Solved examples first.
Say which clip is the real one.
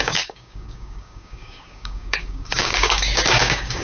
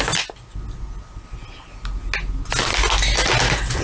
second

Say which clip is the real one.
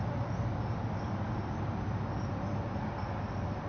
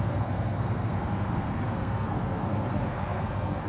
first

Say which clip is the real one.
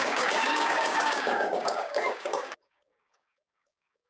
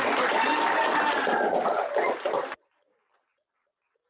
second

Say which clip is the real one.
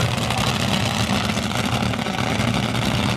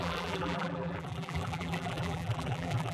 first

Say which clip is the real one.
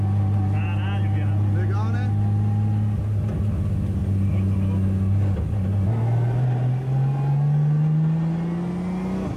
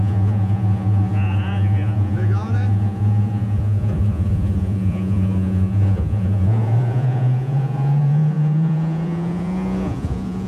first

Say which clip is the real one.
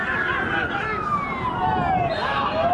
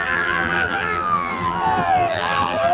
first